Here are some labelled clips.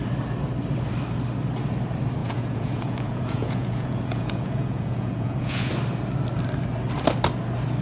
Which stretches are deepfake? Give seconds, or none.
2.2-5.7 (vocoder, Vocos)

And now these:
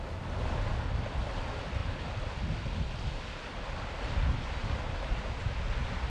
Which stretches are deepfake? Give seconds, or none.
none

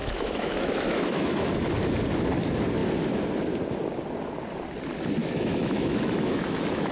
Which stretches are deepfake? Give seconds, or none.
0.0-1.5 (autoencoder, DAC-VAE); 5.2-6.9

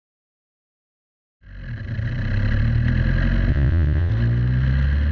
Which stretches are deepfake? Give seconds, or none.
3.5-4.1 (vocoder, Vocos)

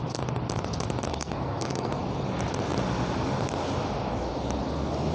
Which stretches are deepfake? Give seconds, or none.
1.1-1.9 (codec, SNAC)

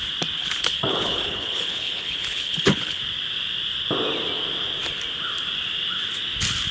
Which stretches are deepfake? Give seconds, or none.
0.4-3.0 (codec, HILCodec)